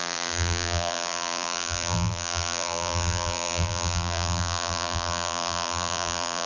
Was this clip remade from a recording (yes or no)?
yes